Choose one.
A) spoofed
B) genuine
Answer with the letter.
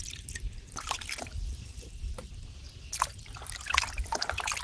A